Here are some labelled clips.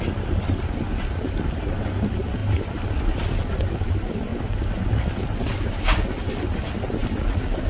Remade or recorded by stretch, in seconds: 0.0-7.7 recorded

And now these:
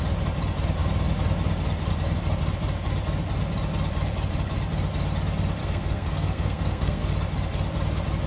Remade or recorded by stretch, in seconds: 0.0-5.6 recorded; 5.6-7.1 remade; 7.1-8.3 recorded

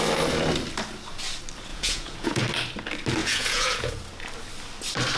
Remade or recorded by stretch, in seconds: 0.0-1.7 recorded; 1.7-2.4 remade; 2.4-3.2 recorded; 3.2-4.0 remade; 4.0-5.2 recorded

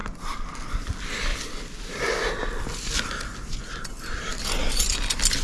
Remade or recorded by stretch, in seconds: 0.0-5.4 recorded